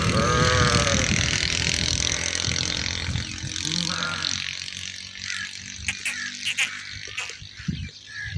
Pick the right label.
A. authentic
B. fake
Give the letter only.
A